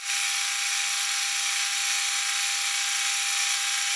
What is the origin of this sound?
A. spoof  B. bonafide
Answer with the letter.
B